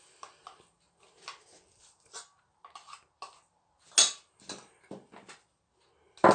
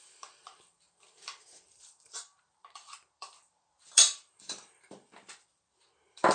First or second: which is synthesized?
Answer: second